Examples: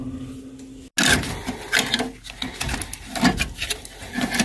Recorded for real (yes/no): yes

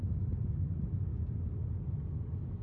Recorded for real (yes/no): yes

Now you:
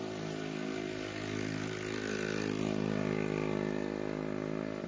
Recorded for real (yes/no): yes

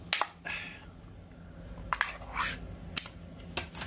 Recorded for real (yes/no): yes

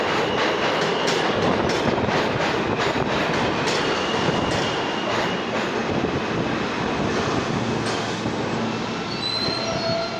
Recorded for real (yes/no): yes